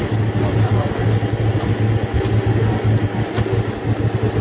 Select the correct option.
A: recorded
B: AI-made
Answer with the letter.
A